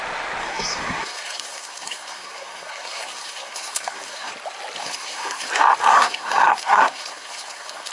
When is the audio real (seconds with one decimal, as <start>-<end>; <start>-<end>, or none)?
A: 0.0-0.4; 4.3-4.8; 5.5-5.9